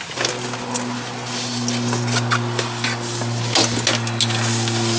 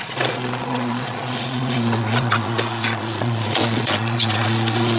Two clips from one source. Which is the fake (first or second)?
second